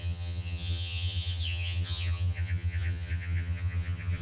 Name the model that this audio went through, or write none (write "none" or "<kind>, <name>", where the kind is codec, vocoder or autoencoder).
vocoder, HiFi-GAN